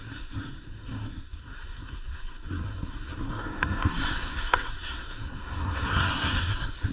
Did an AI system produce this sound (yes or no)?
yes